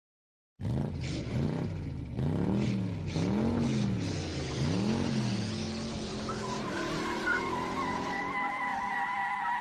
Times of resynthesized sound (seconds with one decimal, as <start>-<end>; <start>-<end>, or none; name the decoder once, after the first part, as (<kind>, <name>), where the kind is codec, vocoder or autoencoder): 6.1-8.2 (vocoder, BigVGAN v2); 8.7-9.2